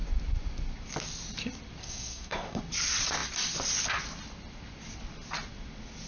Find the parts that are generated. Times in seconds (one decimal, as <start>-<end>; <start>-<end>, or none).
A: 1.8-2.6